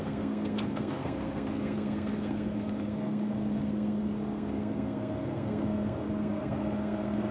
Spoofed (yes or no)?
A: yes